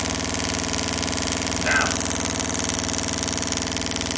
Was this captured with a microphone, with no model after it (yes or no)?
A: yes